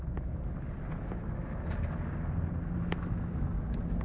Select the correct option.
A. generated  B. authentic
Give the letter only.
B